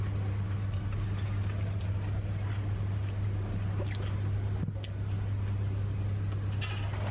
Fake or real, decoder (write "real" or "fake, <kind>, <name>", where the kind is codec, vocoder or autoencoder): real